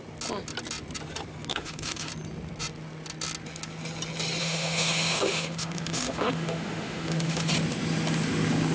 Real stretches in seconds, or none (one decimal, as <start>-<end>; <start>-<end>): 0.0-1.5; 2.1-4.4; 7.5-8.7